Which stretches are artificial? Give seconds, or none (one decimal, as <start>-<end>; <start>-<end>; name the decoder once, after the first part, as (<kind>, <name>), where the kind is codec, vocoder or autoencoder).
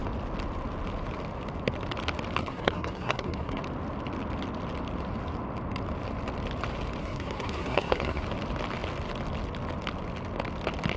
2.4-3.6 (codec, SNAC); 7.0-8.2